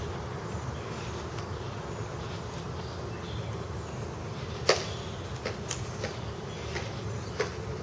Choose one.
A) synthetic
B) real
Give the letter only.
B